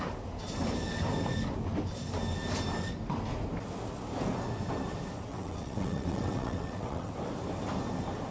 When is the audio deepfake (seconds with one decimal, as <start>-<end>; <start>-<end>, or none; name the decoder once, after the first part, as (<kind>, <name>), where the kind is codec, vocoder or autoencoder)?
5.3-7.1 (vocoder, WaveNeXt)